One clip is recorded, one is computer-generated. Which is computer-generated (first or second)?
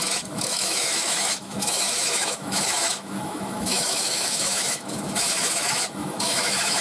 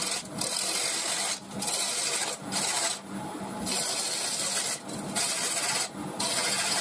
first